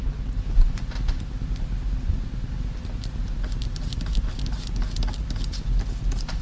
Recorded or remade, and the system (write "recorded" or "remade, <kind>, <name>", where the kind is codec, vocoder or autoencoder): recorded